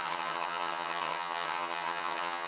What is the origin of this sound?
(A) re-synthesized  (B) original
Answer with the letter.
A